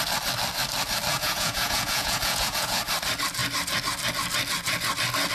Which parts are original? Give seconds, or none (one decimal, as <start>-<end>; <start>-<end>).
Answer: 0.0-1.1; 2.8-5.3